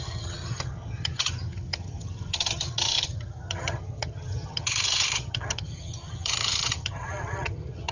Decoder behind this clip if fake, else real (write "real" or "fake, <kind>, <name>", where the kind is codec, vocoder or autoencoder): fake, vocoder, HiFi-GAN